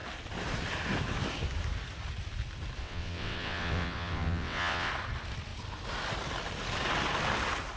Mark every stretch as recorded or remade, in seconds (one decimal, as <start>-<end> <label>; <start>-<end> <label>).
0.0-2.8 recorded; 2.8-4.9 remade; 4.9-7.8 recorded